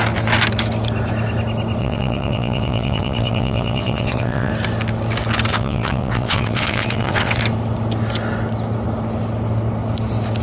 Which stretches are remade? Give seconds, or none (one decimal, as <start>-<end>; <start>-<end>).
1.8-4.5; 5.5-7.4